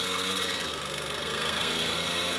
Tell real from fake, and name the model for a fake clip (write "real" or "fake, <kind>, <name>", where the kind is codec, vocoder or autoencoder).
fake, codec, SNAC